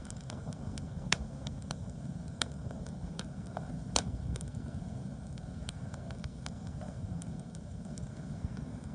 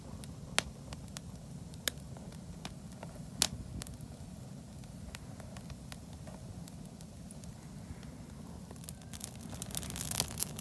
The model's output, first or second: first